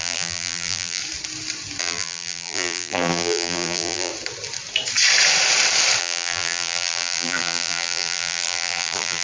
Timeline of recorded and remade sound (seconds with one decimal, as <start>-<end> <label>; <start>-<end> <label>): 0.0-1.0 remade; 1.0-1.8 recorded; 1.8-4.1 remade; 4.1-6.0 recorded; 6.0-9.2 remade

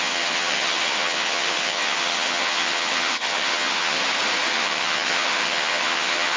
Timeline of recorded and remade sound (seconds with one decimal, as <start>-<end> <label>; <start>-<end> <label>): 0.0-4.0 remade; 4.0-4.5 recorded; 4.5-6.4 remade